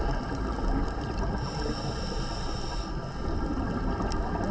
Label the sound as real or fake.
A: real